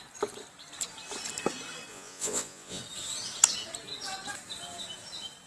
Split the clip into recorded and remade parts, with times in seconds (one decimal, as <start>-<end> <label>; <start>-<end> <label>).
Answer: 0.0-1.9 recorded; 1.9-2.8 remade; 2.8-5.5 recorded